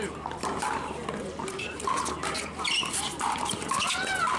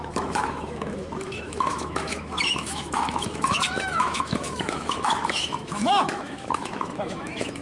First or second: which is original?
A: first